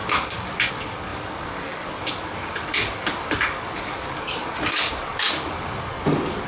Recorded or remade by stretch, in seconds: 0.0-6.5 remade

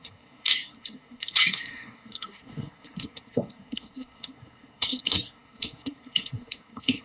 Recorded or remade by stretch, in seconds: 0.0-7.0 remade